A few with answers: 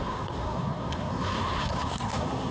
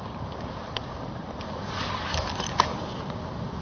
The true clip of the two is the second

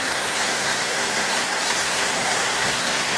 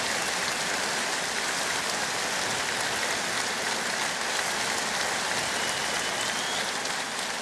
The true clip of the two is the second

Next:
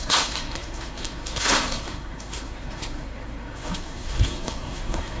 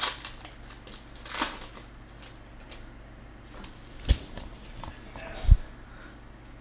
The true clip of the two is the second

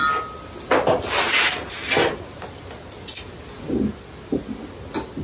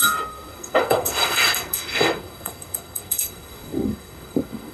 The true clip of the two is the first